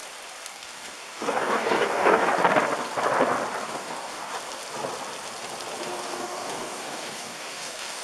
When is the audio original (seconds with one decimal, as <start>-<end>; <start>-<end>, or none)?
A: 0.0-0.5; 2.3-3.6; 4.3-5.9